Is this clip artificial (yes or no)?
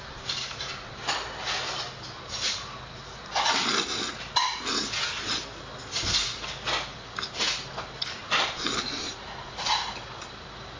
no